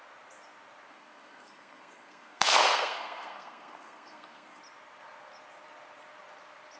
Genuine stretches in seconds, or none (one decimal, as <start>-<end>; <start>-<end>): 0.0-0.9; 4.6-6.8

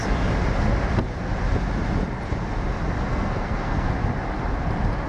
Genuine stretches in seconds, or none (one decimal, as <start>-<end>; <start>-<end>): 0.0-3.1; 3.9-5.1

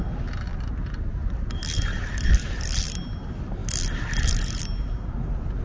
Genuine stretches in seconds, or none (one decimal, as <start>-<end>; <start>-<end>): 0.0-5.6

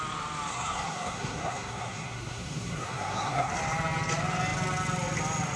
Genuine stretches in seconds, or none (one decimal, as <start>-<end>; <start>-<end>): 0.0-0.5; 3.5-5.6

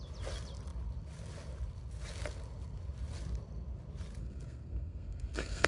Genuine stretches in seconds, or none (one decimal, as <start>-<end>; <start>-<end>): 0.0-4.2

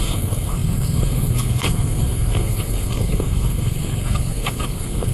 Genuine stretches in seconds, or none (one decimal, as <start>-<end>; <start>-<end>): none

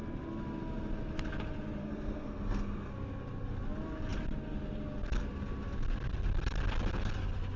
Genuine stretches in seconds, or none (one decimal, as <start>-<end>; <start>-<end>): 0.0-1.8; 2.9-7.6